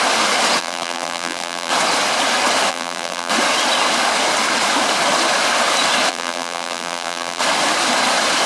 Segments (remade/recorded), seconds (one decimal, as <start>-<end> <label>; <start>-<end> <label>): 0.0-0.6 recorded; 0.6-1.7 remade; 1.7-2.7 recorded; 2.7-3.3 remade; 3.3-6.1 recorded; 6.1-7.4 remade; 7.4-8.5 recorded